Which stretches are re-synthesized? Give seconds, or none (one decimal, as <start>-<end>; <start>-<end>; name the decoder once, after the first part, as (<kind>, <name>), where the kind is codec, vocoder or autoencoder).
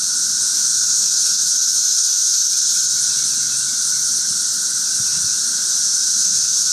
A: 0.5-2.5 (autoencoder, DAC-VAE); 5.9-6.7